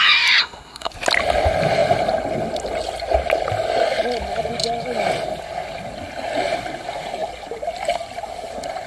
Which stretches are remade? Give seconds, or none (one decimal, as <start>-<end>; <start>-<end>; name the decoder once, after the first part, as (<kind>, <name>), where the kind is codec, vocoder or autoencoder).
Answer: 0.4-0.9 (codec, SNAC)